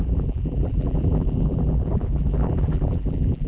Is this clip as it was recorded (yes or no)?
no